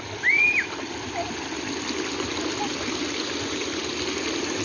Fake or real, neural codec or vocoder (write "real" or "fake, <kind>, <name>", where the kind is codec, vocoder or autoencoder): real